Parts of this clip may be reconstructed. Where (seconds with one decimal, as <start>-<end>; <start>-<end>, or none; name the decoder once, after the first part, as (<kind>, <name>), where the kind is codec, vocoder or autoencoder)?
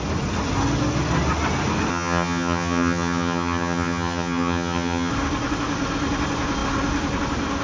1.9-5.1 (vocoder, HiFi-GAN)